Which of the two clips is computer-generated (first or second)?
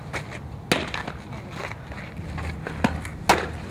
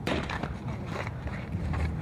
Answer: second